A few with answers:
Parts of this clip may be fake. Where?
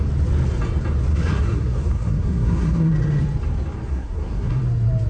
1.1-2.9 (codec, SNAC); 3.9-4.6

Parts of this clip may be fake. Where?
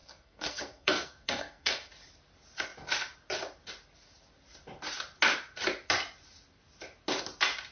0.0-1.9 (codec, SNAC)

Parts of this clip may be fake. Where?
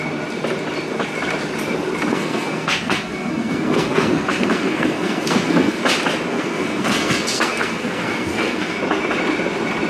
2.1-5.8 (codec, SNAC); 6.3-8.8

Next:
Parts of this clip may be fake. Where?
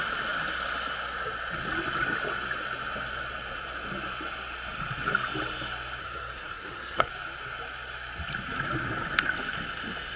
6.0-7.1 (codec, SNAC)